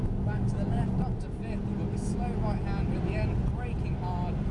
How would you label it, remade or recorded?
recorded